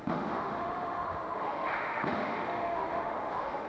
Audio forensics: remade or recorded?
remade